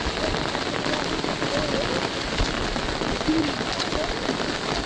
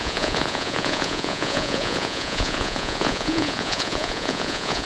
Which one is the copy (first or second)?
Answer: second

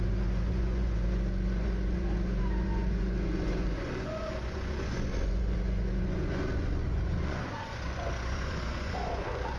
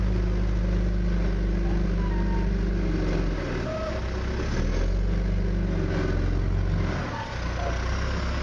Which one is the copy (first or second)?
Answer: first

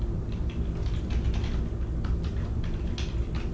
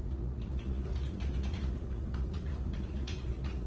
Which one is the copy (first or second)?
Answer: second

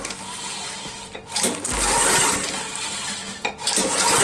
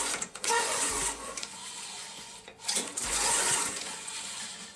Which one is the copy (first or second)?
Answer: second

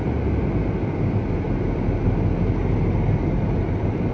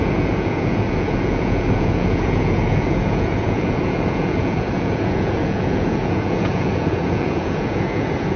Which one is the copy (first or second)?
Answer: second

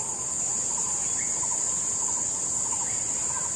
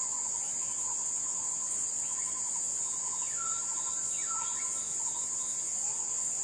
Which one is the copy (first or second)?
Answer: second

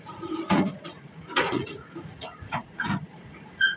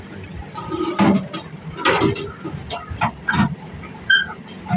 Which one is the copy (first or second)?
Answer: first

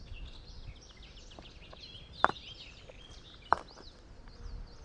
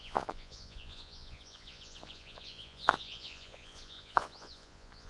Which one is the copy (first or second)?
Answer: second